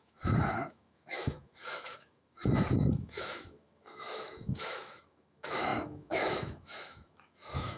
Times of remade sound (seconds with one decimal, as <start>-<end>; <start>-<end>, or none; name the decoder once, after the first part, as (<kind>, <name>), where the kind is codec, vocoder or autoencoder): 0.0-7.8 (autoencoder, DAC-VAE)